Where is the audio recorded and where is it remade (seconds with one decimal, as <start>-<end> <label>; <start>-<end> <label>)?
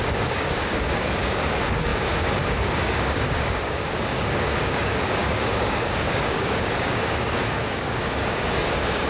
0.0-9.1 remade